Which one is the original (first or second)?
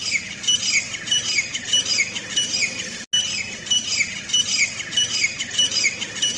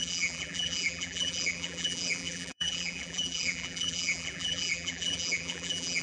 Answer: first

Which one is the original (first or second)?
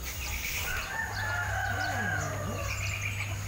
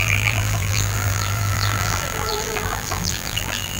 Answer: first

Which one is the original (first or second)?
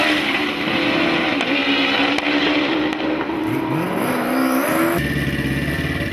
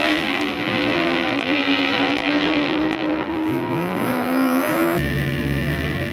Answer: first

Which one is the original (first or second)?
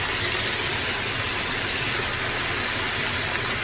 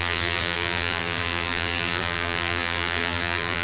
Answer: first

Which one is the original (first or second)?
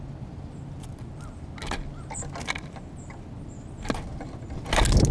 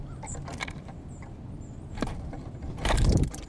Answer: first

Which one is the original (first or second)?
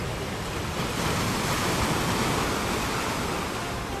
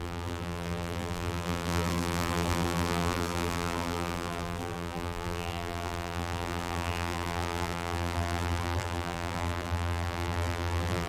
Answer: first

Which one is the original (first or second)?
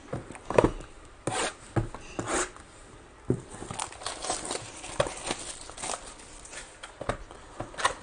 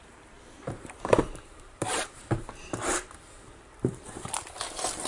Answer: first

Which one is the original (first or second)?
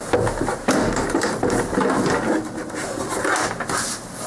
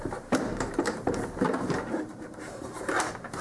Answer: first